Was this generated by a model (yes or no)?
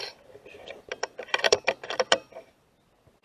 yes